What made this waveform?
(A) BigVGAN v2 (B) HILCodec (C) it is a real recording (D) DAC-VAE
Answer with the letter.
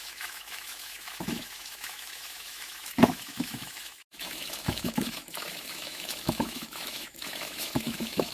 D